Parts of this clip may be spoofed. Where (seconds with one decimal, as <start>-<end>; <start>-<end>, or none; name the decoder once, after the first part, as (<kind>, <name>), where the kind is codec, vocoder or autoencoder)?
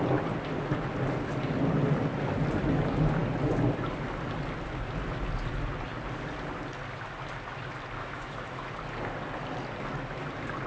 8.0-8.7 (autoencoder, DAC-VAE)